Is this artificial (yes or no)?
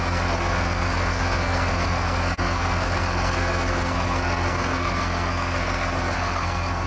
yes